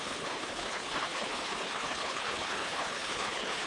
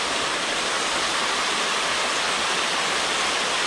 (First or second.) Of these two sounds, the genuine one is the second